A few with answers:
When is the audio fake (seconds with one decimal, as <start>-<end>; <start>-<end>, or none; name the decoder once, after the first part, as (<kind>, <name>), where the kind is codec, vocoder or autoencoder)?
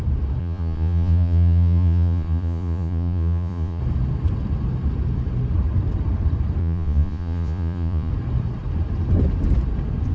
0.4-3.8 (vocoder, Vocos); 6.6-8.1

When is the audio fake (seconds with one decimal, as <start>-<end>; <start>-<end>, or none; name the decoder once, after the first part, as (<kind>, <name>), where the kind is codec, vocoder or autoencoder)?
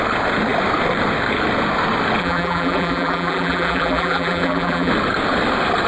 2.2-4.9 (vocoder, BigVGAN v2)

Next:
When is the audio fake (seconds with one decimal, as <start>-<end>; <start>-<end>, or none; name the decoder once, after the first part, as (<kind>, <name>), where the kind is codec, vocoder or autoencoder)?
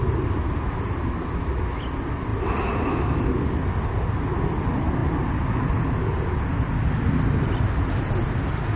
none